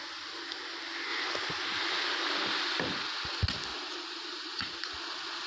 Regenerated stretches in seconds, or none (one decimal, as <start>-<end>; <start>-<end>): 3.7-5.0